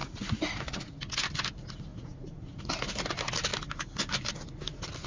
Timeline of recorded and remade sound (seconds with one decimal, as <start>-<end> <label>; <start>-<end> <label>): 0.0-0.9 remade; 0.9-1.9 recorded; 1.9-2.8 remade; 2.8-5.1 recorded